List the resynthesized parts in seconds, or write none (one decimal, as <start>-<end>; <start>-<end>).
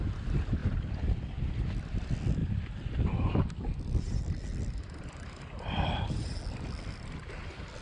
0.6-2.0; 2.4-6.0